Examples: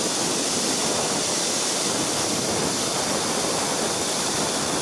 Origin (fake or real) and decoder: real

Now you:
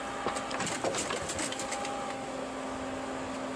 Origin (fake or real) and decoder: real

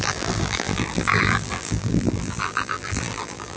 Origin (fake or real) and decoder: fake, vocoder, BigVGAN v2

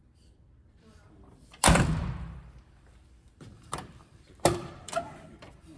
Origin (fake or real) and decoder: fake, vocoder, BigVGAN v2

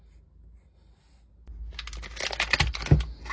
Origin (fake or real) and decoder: real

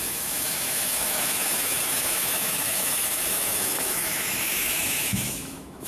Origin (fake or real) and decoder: fake, autoencoder, DAC-VAE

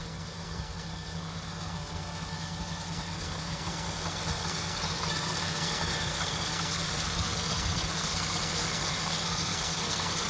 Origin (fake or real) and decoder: fake, codec, SNAC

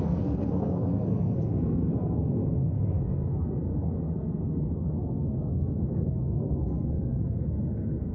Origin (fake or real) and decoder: fake, codec, SNAC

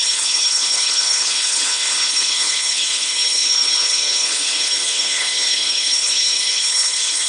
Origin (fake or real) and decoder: fake, codec, HILCodec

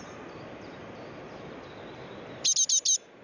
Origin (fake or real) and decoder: real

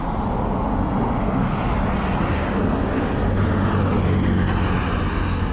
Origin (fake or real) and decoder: real